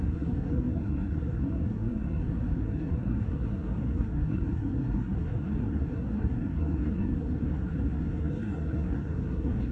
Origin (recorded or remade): remade